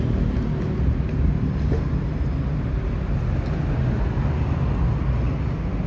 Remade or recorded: recorded